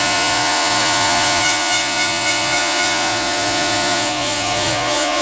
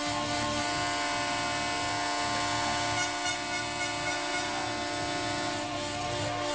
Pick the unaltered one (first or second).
second